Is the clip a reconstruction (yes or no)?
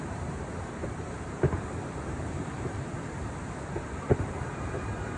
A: yes